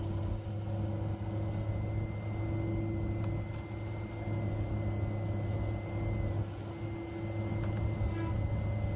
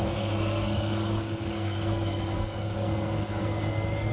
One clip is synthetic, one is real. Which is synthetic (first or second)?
second